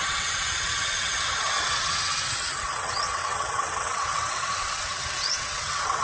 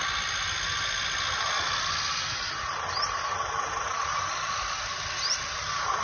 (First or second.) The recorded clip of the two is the second